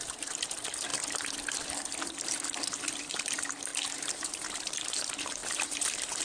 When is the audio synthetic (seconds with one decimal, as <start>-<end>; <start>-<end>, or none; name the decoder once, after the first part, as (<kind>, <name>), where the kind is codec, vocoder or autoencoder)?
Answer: 0.0-0.9 (vocoder, BigVGAN v2); 2.8-6.2